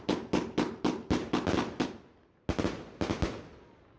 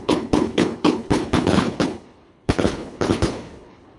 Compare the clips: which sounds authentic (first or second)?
first